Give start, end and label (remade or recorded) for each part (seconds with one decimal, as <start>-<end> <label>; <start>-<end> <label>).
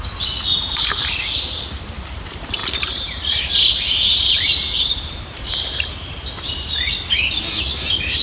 0.0-2.6 recorded; 2.6-6.9 remade; 6.9-8.2 recorded